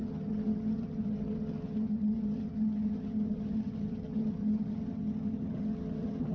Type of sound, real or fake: fake